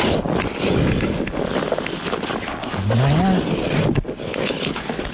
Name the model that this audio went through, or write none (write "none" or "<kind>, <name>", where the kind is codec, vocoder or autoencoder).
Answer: none